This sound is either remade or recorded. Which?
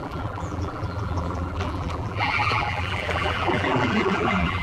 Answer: remade